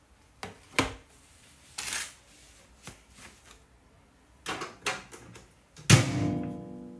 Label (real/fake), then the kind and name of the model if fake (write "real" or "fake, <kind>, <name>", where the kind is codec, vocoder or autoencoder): real